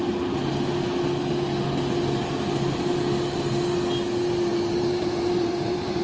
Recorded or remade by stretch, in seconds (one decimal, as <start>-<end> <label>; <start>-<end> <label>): 0.0-4.5 recorded; 4.5-6.0 remade

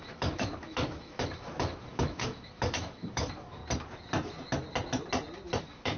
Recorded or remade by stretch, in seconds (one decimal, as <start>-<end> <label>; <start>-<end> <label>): 0.0-3.6 remade; 3.6-5.6 recorded; 5.6-6.0 remade

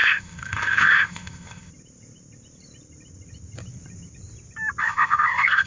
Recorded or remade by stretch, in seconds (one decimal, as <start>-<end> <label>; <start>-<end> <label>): 0.0-1.7 remade; 1.7-4.8 recorded; 4.8-5.7 remade

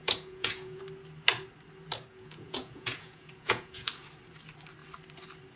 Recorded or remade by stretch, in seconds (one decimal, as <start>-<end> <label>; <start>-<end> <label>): 0.0-0.8 remade; 0.8-2.1 recorded; 2.1-3.9 remade; 3.9-5.6 recorded

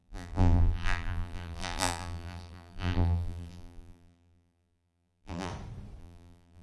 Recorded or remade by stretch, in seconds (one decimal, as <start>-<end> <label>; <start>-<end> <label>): 0.0-5.5 remade; 5.5-6.0 recorded; 6.0-6.6 remade